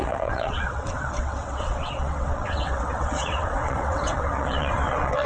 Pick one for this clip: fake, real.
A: fake